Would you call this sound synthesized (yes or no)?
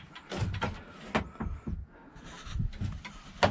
no